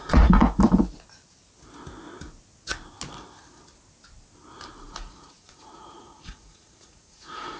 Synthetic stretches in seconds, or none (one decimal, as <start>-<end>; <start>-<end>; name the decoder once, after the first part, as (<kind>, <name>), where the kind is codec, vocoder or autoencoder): 0.0-0.4 (vocoder, Vocos); 4.8-7.6